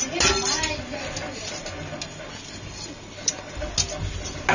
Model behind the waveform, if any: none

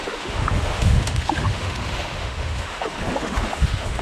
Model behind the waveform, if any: autoencoder, DAC-VAE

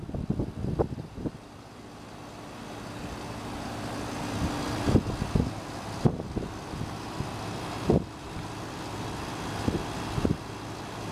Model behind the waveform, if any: none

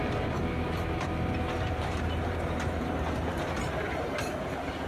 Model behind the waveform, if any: vocoder, BigVGAN v2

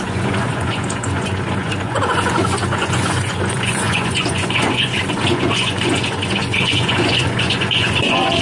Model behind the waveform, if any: vocoder, Vocos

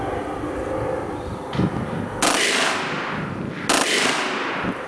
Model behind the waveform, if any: none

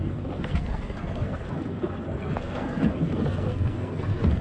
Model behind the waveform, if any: codec, SNAC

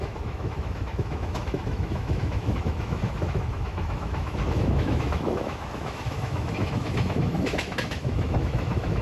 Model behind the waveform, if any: autoencoder, DAC-VAE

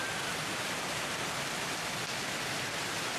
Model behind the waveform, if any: none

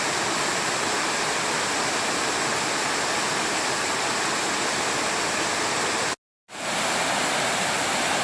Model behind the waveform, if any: none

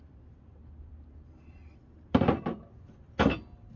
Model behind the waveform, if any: none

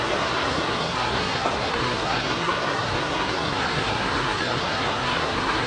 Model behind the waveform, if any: codec, SNAC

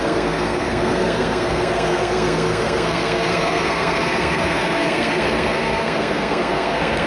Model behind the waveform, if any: codec, SNAC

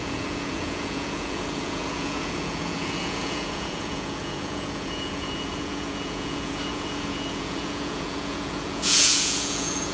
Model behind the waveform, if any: vocoder, Vocos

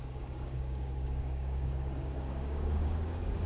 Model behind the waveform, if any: codec, DAC